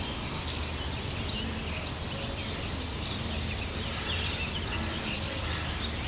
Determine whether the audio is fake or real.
real